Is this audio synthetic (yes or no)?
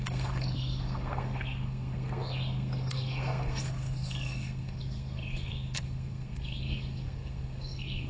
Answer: yes